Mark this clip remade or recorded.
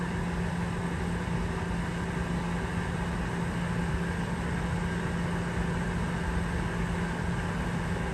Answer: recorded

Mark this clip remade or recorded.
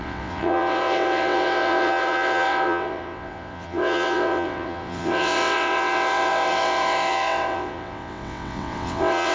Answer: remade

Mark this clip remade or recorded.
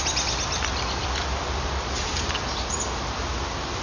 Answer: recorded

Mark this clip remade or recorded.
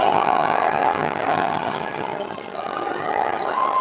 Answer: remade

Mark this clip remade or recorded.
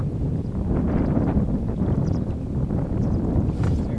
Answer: recorded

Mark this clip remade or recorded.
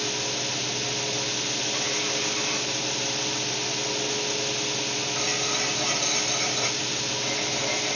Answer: recorded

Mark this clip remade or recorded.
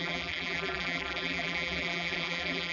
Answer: remade